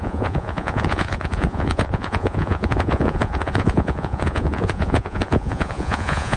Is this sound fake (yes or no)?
yes